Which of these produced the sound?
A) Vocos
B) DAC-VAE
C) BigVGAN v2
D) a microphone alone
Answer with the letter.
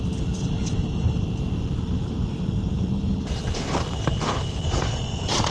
C